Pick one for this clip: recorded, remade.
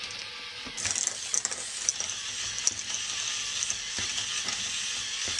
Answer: recorded